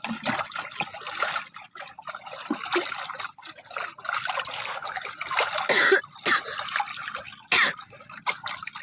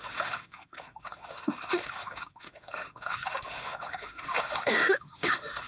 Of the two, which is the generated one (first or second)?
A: second